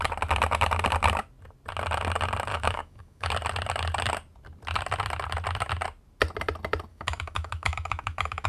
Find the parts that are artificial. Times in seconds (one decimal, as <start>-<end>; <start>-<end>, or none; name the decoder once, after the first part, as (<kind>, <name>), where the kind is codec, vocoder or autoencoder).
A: 2.5-3.3 (autoencoder, DAC-VAE); 6.9-8.5

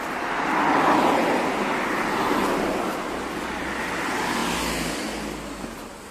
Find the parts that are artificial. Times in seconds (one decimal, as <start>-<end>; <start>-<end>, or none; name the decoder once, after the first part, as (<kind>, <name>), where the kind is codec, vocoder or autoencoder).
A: none

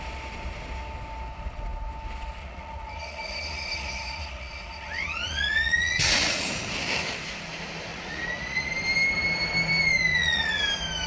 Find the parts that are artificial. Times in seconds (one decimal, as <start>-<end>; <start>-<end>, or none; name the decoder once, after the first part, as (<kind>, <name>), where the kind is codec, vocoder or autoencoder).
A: 2.4-6.5 (vocoder, Vocos); 7.9-8.7; 10.1-10.6

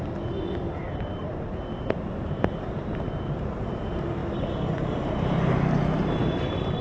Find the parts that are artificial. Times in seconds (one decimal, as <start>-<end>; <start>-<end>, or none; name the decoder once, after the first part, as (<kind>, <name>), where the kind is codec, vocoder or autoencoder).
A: 0.0-4.2 (vocoder, BigVGAN v2); 4.7-6.8